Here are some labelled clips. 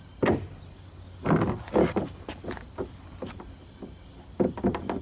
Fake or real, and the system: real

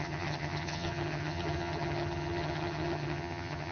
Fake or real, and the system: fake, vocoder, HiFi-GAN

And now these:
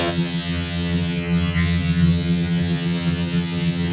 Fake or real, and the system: fake, vocoder, HiFi-GAN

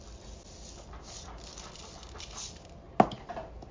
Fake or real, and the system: real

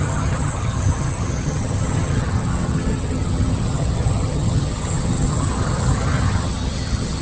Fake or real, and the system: fake, vocoder, HiFi-GAN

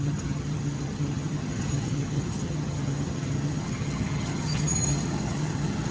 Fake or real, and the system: fake, vocoder, HiFi-GAN